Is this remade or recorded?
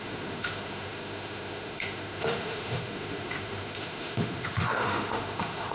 remade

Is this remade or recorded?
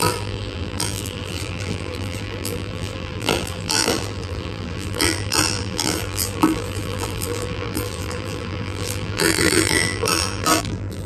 remade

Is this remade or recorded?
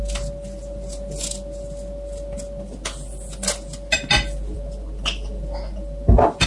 recorded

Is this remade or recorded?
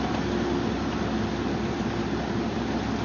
recorded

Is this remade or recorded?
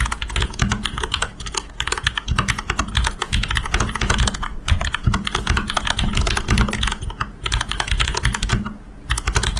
remade